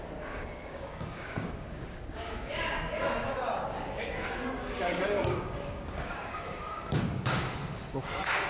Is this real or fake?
fake